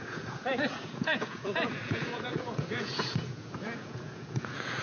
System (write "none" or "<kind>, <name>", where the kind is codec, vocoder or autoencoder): vocoder, Vocos